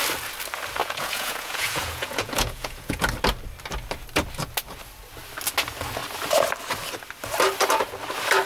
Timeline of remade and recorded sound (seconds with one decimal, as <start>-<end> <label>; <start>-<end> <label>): 0.0-0.8 recorded; 0.8-3.0 remade; 3.0-8.4 recorded